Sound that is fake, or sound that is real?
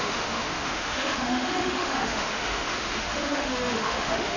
fake